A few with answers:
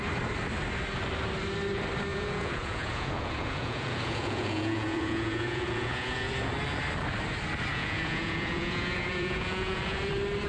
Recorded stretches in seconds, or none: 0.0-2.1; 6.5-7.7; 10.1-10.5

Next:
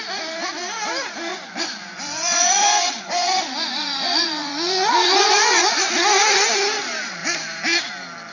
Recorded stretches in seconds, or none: 0.0-1.3; 5.9-8.3

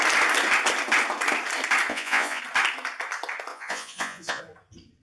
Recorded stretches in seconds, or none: 0.0-1.9; 2.4-3.5; 4.4-5.0